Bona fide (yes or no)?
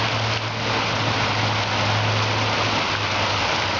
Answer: yes